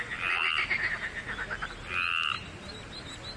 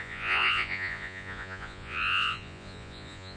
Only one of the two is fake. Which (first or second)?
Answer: second